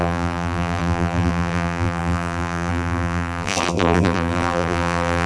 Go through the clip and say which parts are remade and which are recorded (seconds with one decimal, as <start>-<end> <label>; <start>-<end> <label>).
0.0-5.3 remade